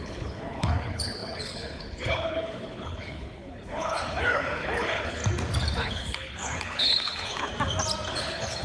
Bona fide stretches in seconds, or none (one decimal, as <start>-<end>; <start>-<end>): 5.2-5.7; 7.5-8.1